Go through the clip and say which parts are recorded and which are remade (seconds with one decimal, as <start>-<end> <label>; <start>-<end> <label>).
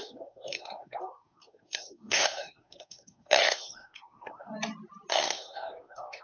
0.0-4.5 remade; 4.5-5.1 recorded; 5.1-6.2 remade